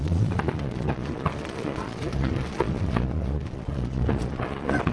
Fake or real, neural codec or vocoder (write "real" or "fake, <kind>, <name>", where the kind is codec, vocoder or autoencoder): fake, vocoder, Vocos